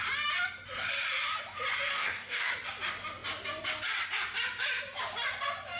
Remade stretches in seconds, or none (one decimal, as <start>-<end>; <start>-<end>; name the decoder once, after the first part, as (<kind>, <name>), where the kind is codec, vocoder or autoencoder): 1.9-2.5 (codec, DAC)